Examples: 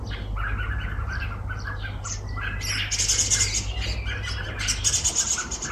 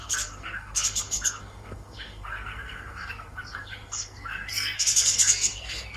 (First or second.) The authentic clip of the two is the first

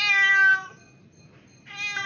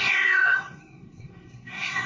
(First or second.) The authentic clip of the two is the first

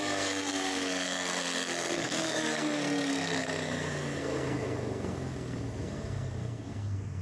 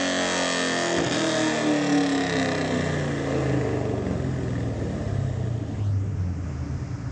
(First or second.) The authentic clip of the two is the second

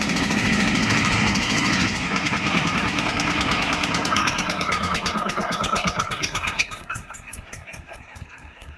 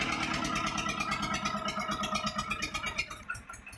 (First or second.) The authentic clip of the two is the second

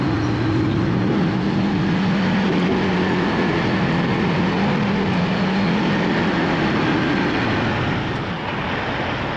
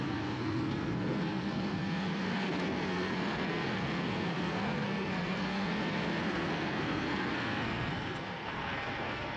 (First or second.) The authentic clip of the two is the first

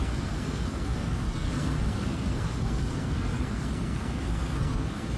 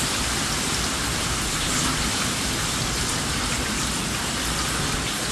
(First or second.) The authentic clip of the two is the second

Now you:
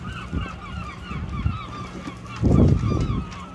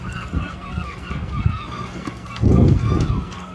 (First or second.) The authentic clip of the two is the first